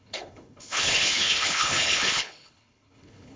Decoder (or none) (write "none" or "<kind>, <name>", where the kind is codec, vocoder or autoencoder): codec, HILCodec